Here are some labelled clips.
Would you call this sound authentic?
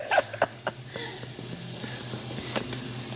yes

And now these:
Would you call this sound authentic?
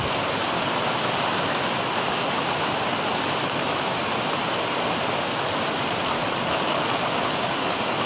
yes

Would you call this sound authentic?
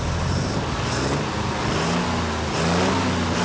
yes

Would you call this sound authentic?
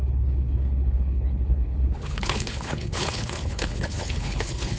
no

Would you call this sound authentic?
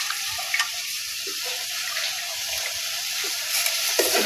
no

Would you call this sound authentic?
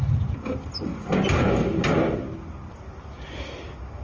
yes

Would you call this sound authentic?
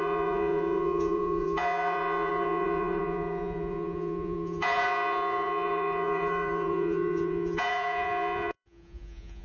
no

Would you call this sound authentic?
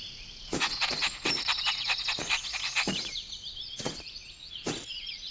no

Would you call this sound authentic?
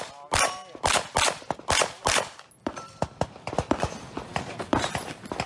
no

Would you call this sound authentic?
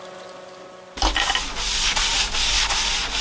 yes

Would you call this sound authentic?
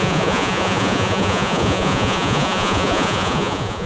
no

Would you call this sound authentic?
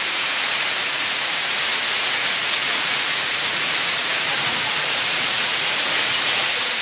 no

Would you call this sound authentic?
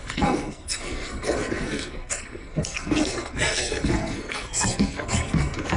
no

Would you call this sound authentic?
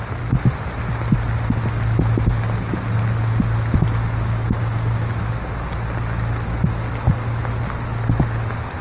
yes